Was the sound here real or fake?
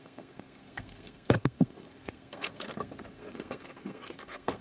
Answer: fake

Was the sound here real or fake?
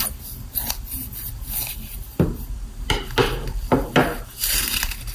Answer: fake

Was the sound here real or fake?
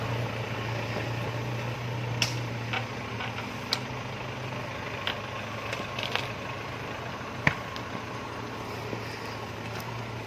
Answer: real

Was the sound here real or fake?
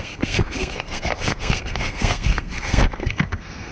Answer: fake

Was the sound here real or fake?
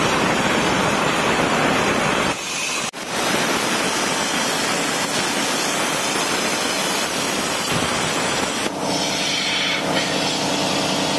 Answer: real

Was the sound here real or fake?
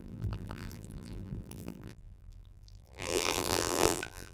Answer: fake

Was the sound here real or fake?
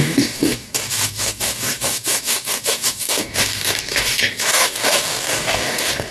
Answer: fake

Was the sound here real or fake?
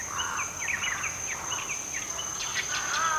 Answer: real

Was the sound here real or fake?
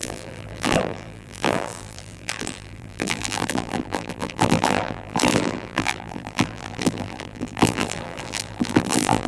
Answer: fake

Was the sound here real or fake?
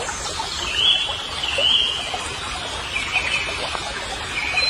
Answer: real